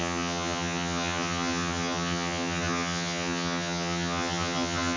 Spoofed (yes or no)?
yes